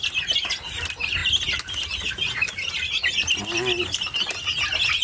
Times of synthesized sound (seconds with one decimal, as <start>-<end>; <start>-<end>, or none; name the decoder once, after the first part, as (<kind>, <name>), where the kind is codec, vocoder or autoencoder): none